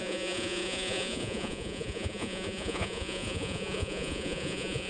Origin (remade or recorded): remade